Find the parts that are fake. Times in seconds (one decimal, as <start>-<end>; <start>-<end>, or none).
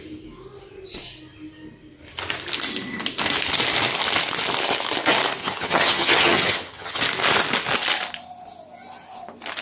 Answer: 5.4-7.0